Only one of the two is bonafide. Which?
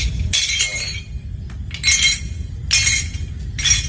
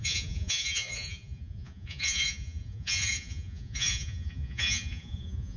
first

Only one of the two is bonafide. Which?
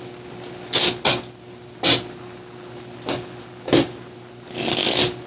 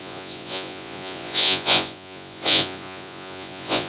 first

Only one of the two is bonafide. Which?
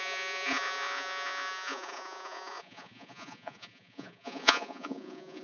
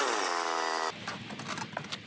second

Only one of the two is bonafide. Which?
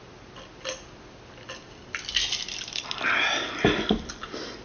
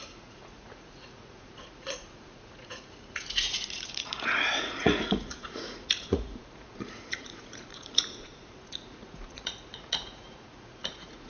first